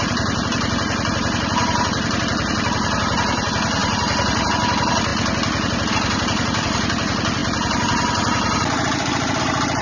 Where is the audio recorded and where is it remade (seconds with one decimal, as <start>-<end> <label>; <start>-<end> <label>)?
0.0-5.1 remade; 5.1-5.9 recorded; 5.9-9.8 remade